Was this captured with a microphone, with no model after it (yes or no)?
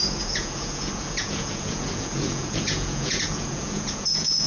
no